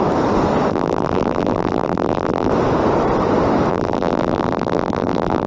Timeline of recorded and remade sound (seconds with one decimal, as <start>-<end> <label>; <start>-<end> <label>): 0.0-0.7 recorded; 0.7-2.5 remade; 2.5-3.7 recorded; 3.7-5.5 remade